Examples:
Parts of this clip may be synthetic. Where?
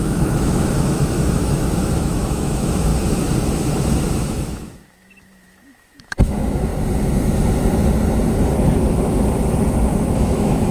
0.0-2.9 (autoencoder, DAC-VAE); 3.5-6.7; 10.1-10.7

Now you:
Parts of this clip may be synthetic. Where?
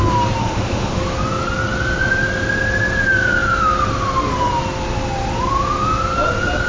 0.4-1.0 (autoencoder, DAC-VAE)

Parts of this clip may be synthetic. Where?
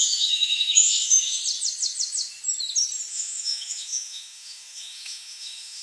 0.0-1.4 (autoencoder, DAC-VAE); 3.1-5.8